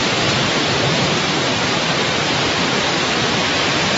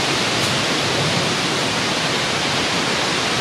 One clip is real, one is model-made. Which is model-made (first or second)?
first